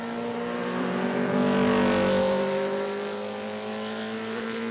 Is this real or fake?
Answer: real